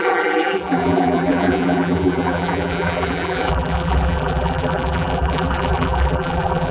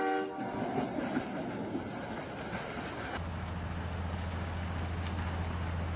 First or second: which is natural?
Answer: second